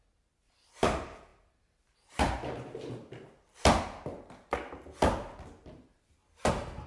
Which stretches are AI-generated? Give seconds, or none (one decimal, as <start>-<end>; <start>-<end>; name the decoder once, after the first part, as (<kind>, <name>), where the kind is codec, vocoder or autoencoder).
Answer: none

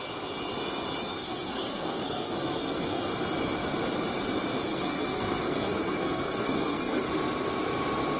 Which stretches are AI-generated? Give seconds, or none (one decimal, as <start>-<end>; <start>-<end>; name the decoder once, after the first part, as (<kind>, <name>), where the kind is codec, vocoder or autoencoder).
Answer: 1.1-3.1 (codec, SNAC); 4.7-7.1

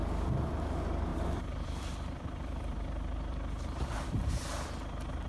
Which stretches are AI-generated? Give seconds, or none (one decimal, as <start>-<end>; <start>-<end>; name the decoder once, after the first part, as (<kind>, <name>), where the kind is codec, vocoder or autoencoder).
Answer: 1.1-4.3 (vocoder, BigVGAN v2)